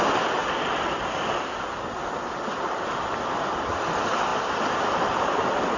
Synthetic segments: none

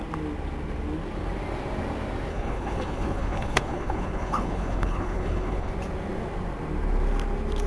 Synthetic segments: 2.3-5.7 (codec, HILCodec)

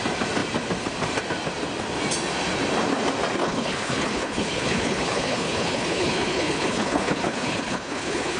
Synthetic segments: 3.4-8.4 (codec, HILCodec)

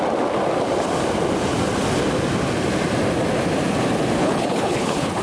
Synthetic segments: 4.2-5.2 (codec, HILCodec)